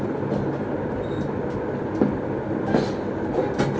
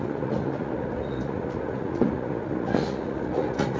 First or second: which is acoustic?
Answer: first